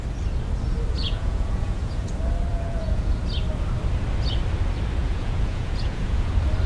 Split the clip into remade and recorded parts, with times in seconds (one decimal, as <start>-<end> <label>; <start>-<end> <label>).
0.0-1.0 recorded; 1.0-2.1 remade; 2.1-2.5 recorded; 2.5-3.2 remade; 3.2-5.0 recorded; 5.0-6.3 remade; 6.3-6.7 recorded